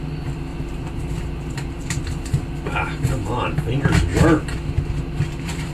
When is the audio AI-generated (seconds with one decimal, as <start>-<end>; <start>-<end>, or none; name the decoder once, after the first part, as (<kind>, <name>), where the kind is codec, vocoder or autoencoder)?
0.5-2.0 (vocoder, BigVGAN v2)